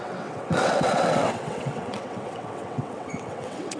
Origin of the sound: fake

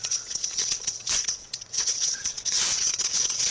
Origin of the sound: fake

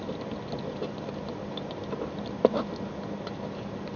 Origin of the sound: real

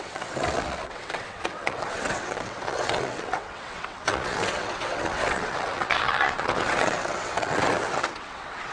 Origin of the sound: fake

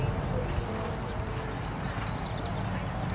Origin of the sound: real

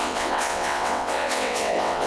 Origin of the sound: fake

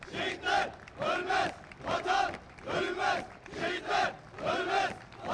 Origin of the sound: real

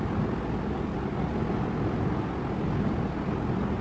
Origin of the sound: real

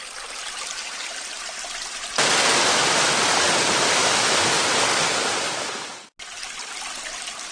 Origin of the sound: real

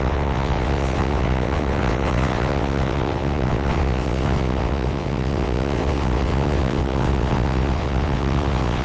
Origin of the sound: fake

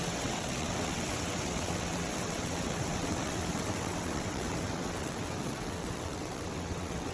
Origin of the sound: fake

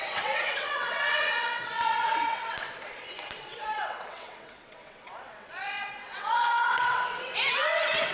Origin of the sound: fake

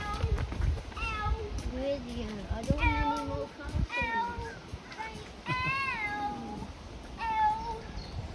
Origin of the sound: real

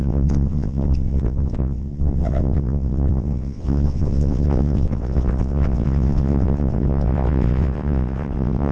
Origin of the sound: fake